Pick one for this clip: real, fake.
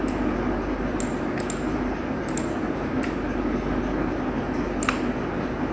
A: real